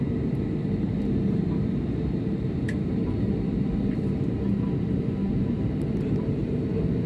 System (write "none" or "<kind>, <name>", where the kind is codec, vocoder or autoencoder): vocoder, BigVGAN v2